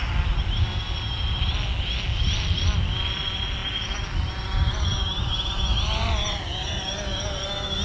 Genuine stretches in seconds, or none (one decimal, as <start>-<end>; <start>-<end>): 0.0-7.8